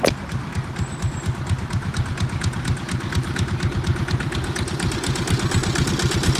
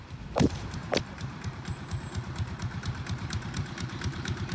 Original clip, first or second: first